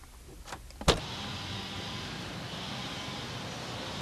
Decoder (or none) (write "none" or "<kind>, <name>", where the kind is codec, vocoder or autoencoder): none